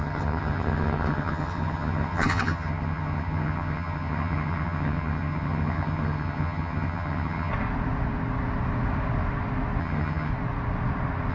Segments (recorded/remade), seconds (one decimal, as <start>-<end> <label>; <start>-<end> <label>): 0.0-7.5 remade; 7.5-9.8 recorded; 9.8-10.3 remade; 10.3-11.3 recorded